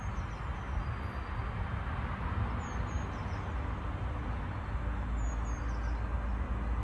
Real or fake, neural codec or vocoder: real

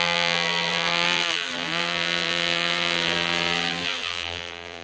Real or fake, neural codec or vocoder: fake, vocoder, BigVGAN v2